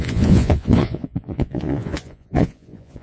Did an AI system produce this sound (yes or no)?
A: yes